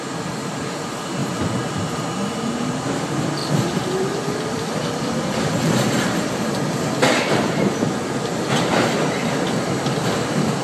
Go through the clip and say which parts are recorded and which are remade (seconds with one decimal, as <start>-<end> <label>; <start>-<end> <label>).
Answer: 0.0-10.6 remade